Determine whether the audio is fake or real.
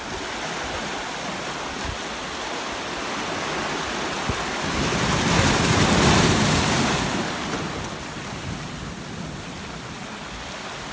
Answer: real